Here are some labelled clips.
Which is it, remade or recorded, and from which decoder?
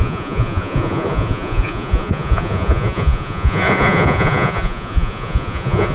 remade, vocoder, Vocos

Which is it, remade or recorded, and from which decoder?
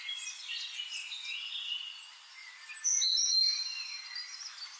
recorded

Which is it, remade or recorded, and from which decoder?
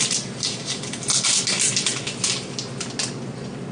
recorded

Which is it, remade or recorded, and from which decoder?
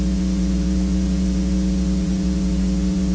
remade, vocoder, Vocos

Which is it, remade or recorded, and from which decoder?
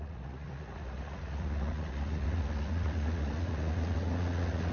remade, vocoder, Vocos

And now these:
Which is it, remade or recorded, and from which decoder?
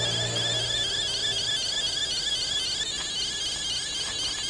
recorded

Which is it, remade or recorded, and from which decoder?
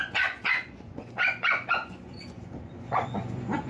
remade, vocoder, Vocos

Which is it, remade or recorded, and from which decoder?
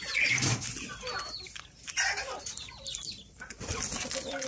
recorded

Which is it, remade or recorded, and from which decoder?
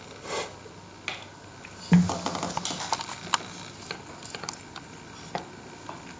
recorded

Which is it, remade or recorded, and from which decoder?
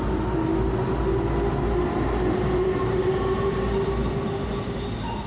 recorded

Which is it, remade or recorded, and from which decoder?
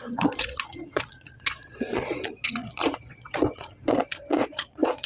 remade, vocoder, Vocos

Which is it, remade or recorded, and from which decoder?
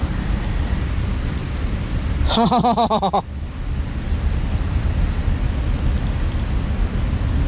recorded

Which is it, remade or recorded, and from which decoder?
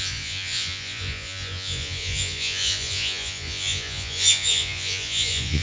remade, vocoder, Vocos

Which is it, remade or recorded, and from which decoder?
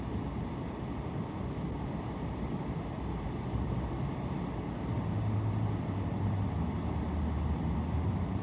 recorded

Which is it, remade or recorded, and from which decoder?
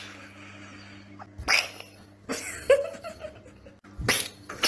recorded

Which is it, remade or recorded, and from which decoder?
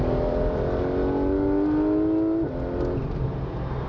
recorded